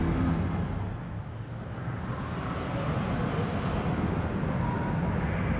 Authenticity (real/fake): real